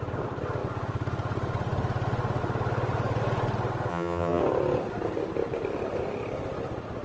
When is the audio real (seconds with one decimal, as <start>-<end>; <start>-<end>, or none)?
0.0-3.9; 4.4-7.0